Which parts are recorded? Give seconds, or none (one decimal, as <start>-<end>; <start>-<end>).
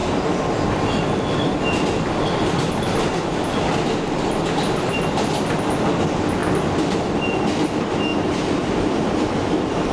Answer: 0.0-6.4; 7.2-8.1